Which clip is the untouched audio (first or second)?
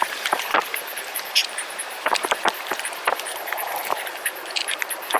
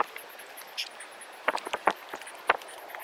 second